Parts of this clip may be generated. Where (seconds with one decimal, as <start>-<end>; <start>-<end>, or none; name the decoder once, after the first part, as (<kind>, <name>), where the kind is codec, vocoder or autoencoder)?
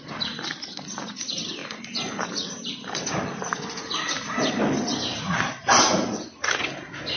1.6-4.6 (vocoder, BigVGAN v2); 5.1-5.8